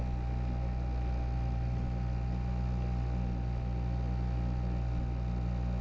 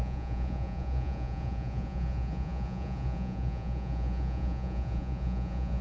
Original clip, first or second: first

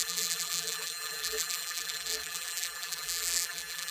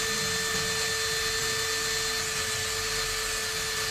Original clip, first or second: second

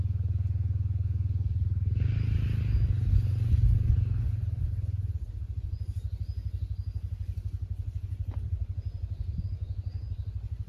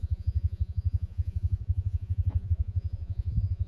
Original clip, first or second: first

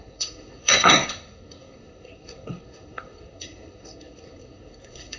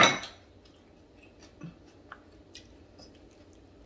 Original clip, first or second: second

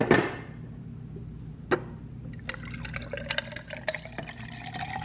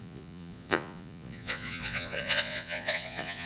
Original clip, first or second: first